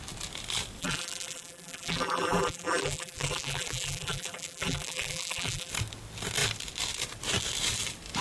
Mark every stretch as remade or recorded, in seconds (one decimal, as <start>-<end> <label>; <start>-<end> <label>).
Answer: 0.0-0.8 recorded; 0.8-5.7 remade; 5.7-8.2 recorded